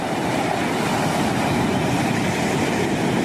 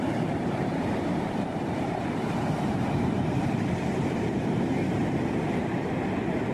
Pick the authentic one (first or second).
first